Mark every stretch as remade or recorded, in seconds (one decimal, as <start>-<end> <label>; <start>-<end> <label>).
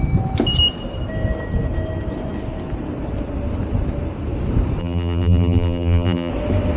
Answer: 0.0-4.8 recorded; 4.8-6.3 remade; 6.3-6.8 recorded